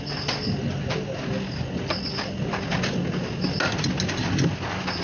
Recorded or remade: recorded